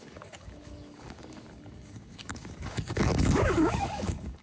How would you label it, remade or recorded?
remade